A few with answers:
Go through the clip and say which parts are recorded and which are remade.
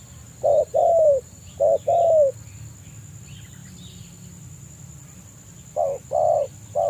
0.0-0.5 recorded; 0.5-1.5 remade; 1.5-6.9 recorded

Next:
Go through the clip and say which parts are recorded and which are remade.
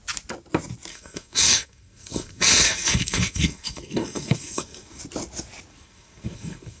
0.0-0.9 recorded; 0.9-5.0 remade; 5.0-5.7 recorded; 5.7-6.8 remade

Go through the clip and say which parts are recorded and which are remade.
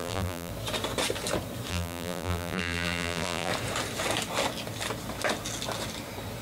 0.0-0.5 remade; 0.5-1.7 recorded; 1.7-3.5 remade; 3.5-6.4 recorded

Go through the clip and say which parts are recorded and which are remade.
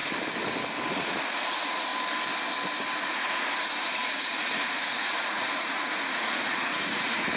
0.0-0.9 recorded; 0.9-1.9 remade; 1.9-3.0 recorded; 3.0-7.4 remade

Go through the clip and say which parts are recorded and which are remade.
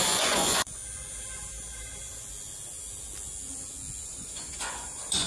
0.0-0.8 remade; 0.8-4.0 recorded; 4.0-5.3 remade